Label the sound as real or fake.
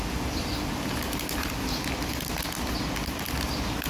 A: real